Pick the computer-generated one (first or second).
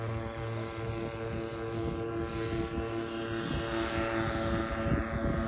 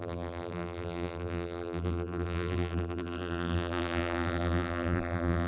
second